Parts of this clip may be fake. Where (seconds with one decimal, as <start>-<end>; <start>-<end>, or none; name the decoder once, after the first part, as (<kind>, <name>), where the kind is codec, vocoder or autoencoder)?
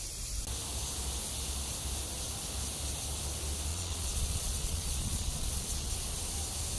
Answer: 3.7-5.9 (vocoder, Vocos)